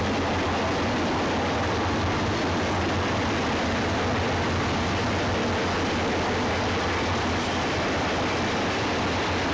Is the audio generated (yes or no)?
no